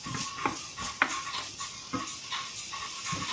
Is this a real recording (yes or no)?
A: yes